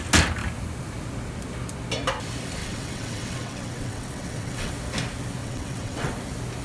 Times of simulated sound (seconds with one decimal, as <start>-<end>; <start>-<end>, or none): 2.6-4.7; 5.4-6.1